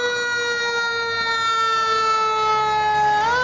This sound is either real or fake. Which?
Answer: real